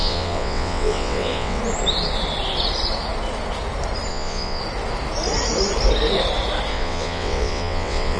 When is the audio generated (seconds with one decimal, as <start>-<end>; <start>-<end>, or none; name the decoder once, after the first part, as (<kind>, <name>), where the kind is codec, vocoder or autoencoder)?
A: 0.0-1.6 (vocoder, WaveNeXt); 4.1-4.6; 6.7-8.2